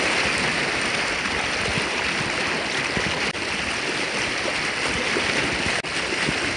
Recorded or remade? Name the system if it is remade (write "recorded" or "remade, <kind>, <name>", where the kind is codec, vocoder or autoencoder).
recorded